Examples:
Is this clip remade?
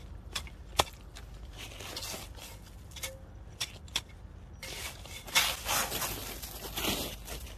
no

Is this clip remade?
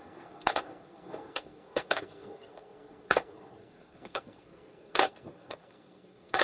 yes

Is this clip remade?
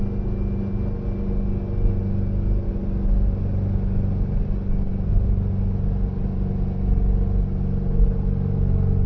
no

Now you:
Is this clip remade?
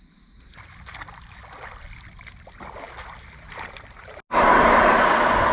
no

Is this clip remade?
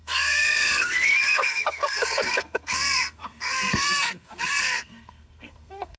yes